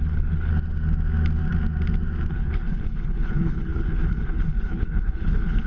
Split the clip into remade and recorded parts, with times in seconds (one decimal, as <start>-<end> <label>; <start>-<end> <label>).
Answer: 0.0-0.5 remade; 0.5-2.3 recorded; 2.3-5.7 remade